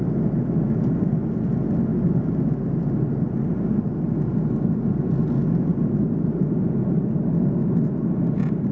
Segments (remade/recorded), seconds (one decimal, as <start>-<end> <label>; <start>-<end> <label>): 0.0-8.7 recorded